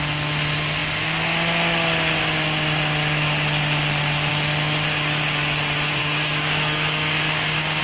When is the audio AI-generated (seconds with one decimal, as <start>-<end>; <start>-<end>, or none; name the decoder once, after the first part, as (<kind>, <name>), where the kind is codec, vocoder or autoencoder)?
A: 6.0-7.8 (codec, DAC)